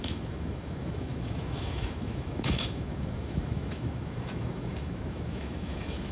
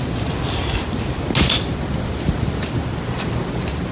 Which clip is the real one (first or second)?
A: second